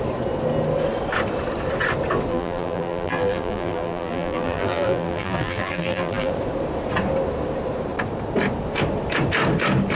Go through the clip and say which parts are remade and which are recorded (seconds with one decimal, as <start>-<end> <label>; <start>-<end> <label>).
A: 0.0-2.3 recorded; 2.3-6.3 remade; 6.3-9.9 recorded